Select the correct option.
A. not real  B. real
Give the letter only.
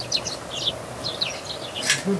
B